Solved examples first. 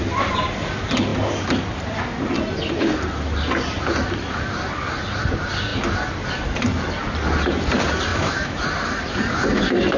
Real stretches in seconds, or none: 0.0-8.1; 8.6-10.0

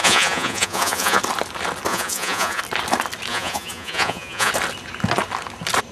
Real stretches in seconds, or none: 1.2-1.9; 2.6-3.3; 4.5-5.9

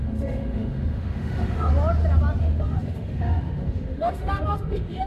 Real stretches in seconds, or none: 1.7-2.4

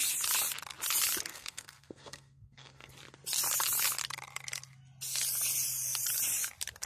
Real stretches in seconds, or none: 0.0-1.3; 2.9-6.9

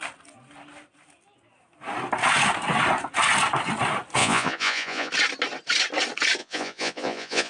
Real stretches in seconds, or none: 0.0-4.2; 5.1-6.4

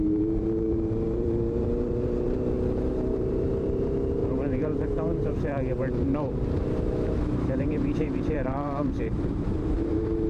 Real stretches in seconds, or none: none